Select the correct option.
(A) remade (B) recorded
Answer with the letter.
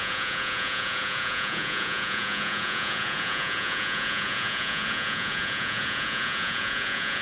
A